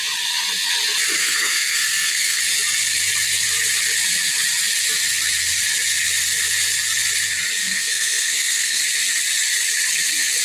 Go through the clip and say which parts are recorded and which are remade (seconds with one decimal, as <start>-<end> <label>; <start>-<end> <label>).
0.0-1.2 recorded; 1.2-2.4 remade; 2.4-7.6 recorded; 7.6-8.8 remade; 8.8-10.4 recorded